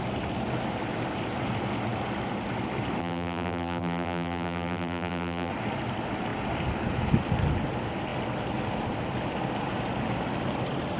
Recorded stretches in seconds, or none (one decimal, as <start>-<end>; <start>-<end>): 0.0-3.0; 5.5-11.0